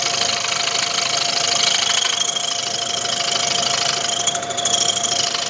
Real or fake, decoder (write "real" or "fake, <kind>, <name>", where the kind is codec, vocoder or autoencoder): real